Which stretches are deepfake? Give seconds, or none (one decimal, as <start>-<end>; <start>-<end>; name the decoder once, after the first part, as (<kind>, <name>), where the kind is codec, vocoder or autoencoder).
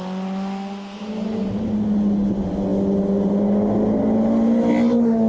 none